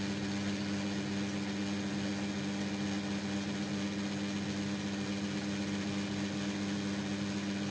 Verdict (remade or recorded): recorded